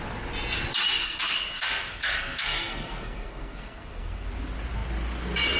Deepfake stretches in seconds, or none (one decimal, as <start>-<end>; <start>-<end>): 1.0-4.3